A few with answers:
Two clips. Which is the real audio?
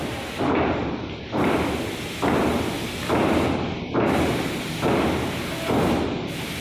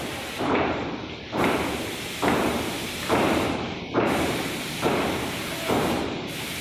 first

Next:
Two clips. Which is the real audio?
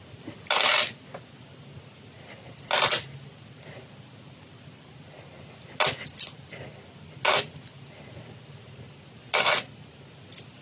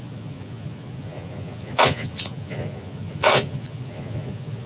first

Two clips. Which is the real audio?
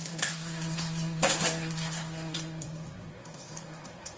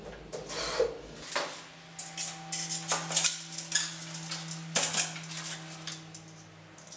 second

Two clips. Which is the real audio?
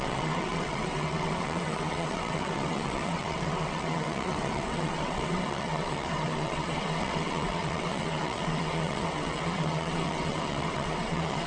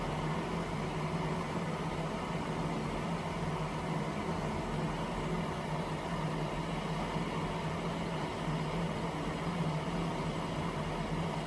second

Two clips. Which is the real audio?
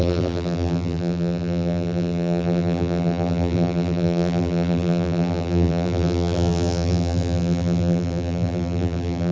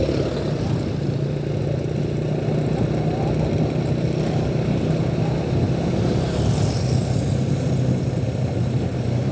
second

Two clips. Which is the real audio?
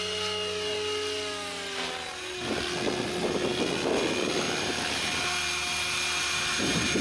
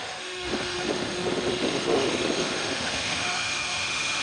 first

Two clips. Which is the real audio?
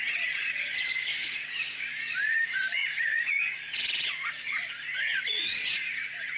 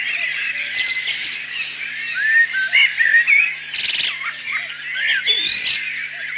second